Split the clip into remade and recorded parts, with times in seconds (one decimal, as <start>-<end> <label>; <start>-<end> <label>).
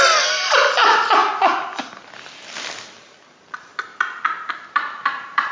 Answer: 0.0-1.2 remade; 1.2-4.5 recorded; 4.5-5.5 remade